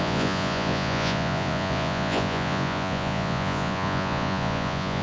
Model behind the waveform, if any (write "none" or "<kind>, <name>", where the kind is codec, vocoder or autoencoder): vocoder, Vocos